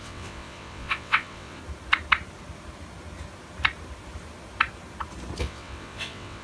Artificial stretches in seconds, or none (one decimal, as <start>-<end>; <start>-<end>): 0.0-1.6; 5.4-6.4